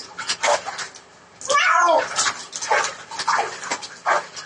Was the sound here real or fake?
real